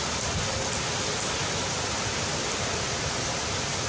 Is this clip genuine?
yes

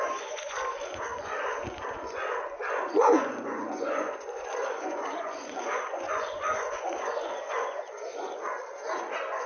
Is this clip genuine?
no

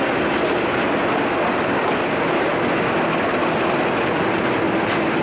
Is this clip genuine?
yes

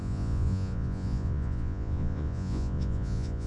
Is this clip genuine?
no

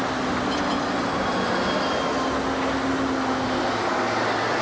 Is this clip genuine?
yes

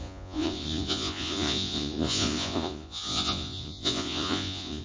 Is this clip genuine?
no